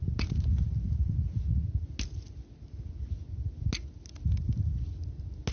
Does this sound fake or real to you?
real